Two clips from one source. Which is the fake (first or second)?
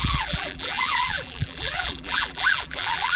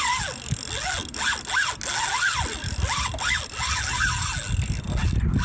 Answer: first